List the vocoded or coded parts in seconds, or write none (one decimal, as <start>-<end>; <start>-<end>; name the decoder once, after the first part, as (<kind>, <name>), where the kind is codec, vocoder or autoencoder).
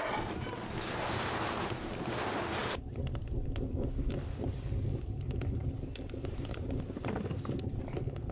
6.3-7.2 (vocoder, BigVGAN v2)